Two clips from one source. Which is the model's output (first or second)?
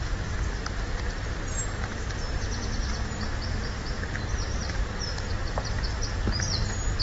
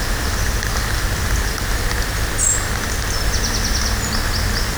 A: first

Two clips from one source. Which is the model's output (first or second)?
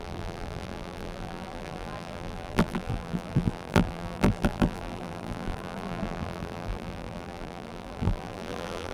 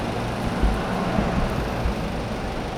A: first